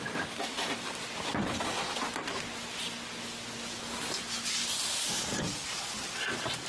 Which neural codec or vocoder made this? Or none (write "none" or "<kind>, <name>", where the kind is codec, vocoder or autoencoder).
none